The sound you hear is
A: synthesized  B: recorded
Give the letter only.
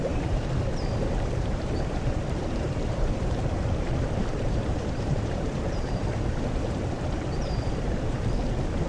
A